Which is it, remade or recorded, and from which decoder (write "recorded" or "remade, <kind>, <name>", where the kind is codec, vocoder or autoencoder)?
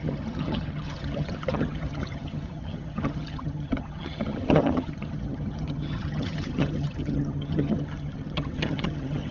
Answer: remade, vocoder, HiFi-GAN